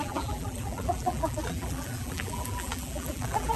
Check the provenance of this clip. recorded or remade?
remade